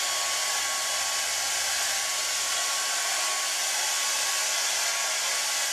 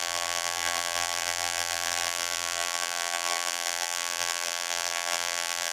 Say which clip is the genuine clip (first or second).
first